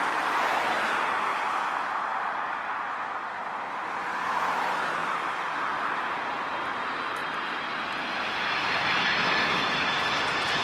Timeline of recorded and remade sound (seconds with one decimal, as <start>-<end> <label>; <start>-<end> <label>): 0.0-5.0 recorded; 5.0-6.4 remade; 6.4-10.6 recorded